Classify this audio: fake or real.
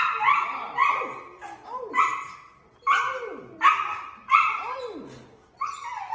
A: real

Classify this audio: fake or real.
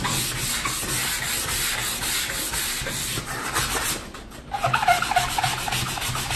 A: real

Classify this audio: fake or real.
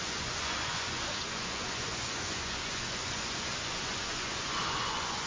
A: fake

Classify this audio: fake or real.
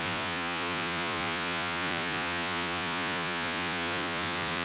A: fake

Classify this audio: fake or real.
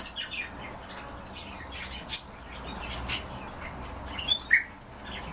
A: real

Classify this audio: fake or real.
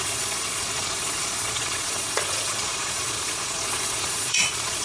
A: fake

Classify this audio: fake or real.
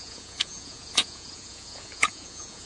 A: fake